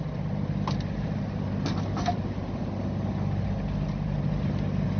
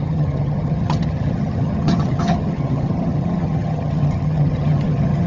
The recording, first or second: first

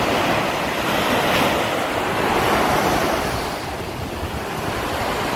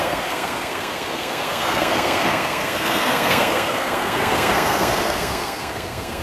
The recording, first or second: first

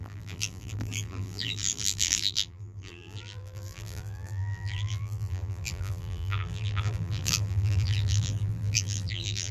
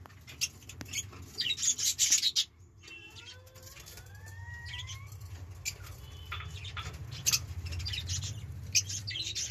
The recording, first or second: second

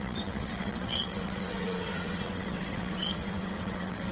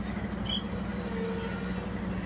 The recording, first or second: second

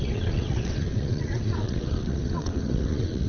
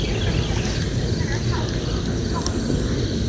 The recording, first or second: second